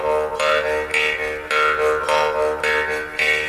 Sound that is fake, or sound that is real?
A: real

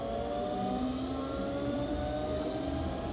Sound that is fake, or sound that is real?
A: real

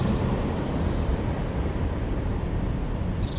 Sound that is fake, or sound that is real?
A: fake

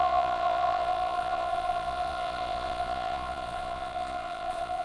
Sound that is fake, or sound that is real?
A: fake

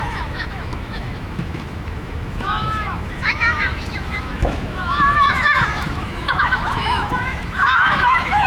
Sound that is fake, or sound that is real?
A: fake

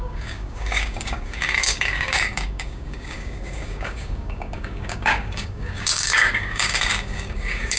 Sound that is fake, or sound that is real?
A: fake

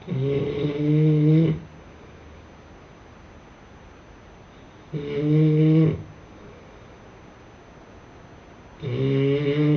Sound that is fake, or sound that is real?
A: real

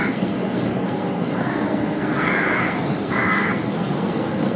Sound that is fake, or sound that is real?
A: fake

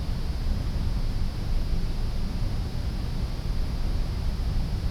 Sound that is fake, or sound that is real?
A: real